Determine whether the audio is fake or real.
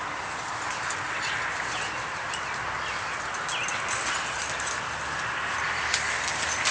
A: real